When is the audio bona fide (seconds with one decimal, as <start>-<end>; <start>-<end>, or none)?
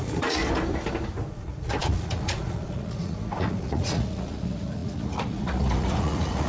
0.4-1.3